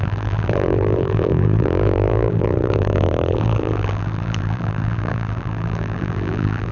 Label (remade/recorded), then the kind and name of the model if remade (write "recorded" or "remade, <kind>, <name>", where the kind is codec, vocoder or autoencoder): remade, vocoder, BigVGAN v2